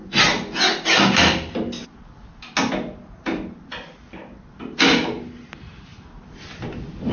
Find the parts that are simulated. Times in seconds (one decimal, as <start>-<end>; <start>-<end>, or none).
none